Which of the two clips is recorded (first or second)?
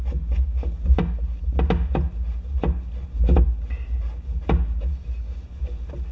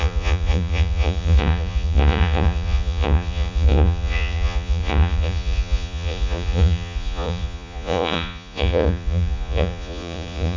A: first